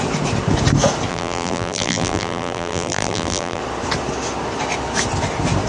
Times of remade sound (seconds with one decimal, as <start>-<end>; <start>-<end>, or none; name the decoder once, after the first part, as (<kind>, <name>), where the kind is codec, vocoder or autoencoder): 1.1-3.6 (vocoder, BigVGAN v2)